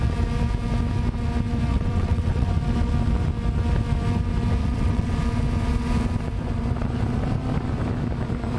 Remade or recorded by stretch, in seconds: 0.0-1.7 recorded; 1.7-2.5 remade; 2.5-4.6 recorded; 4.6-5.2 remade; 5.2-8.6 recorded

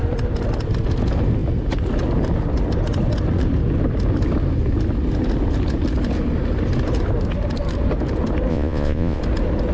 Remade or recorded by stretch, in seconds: 0.0-8.5 recorded; 8.5-9.2 remade; 9.2-9.7 recorded

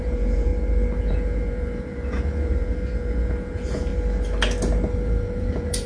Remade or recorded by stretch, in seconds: 0.0-0.5 remade; 0.5-1.0 recorded; 1.0-3.9 remade; 3.9-4.9 recorded; 4.9-5.9 remade

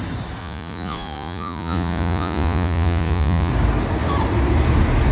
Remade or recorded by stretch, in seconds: 0.0-0.4 recorded; 0.4-3.5 remade; 3.5-5.1 recorded

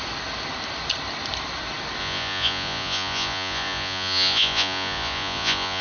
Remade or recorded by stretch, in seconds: 0.0-2.0 recorded; 2.0-5.8 remade

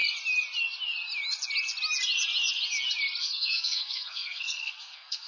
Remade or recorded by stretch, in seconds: 0.0-3.2 recorded; 3.2-5.3 remade